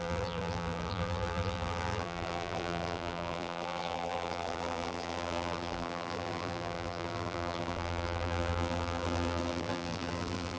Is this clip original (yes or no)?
no